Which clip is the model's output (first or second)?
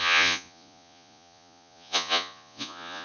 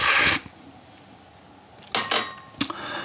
first